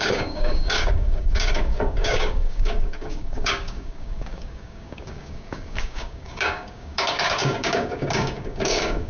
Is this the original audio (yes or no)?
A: no